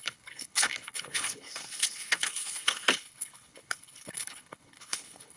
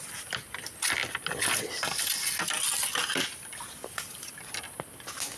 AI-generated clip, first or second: first